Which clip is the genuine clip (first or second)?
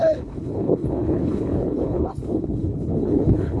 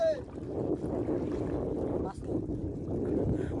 second